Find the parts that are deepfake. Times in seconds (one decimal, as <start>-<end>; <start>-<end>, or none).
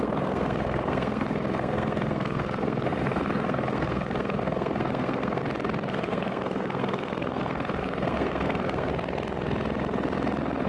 0.0-5.4; 5.9-8.9